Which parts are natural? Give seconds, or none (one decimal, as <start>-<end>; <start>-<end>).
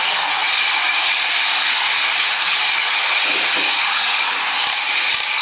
0.0-5.4